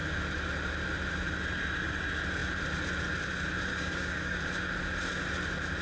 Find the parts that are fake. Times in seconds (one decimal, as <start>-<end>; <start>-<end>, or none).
3.7-4.4